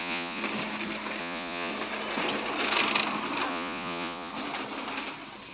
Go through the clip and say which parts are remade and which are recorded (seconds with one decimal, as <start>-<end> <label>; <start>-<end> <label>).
0.0-0.4 remade; 0.4-1.2 recorded; 1.2-1.7 remade; 1.7-3.5 recorded; 3.5-4.3 remade; 4.3-5.5 recorded